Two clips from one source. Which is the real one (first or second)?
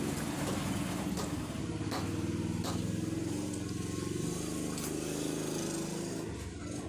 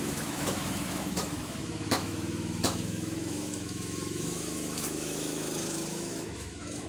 first